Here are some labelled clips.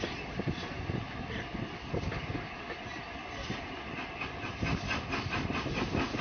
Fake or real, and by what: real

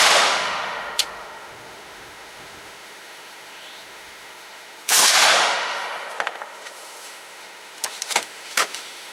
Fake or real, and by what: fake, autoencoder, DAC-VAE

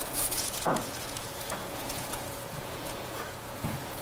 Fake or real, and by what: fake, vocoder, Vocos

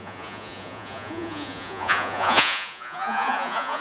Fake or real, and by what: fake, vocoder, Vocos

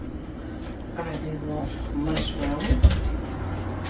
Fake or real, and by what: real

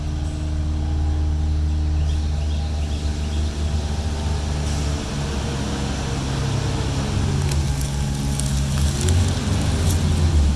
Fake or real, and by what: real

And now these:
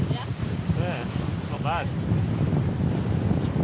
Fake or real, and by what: real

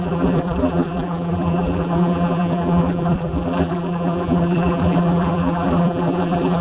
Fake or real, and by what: fake, vocoder, BigVGAN v2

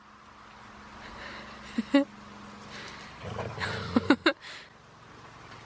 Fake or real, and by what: real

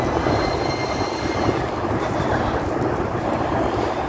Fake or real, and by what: real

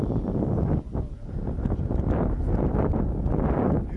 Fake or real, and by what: real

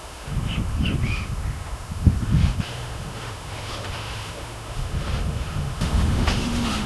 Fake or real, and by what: fake, autoencoder, DAC-VAE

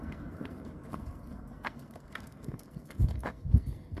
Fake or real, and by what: fake, codec, SNAC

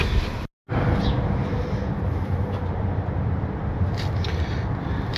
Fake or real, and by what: real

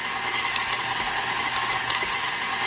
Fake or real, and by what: real